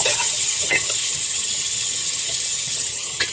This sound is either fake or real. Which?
fake